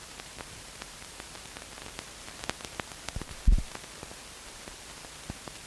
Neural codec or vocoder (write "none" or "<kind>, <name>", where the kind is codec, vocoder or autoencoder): vocoder, BigVGAN v2